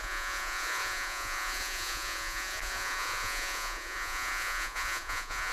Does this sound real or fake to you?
fake